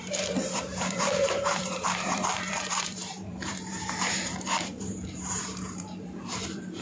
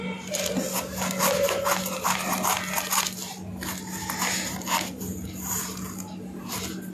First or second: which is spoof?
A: first